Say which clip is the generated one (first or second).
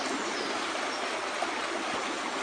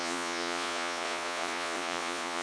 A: second